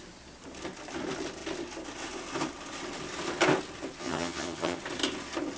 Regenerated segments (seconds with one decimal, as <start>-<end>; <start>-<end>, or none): 4.0-4.8